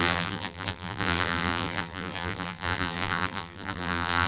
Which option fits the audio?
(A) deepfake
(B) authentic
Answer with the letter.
A